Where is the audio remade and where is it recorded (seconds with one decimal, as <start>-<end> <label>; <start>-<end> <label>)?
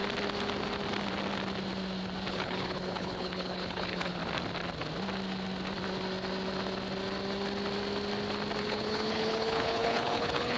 0.0-2.3 recorded; 2.3-4.2 remade; 4.2-8.6 recorded; 8.6-10.6 remade